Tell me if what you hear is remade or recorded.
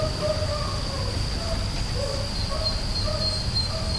recorded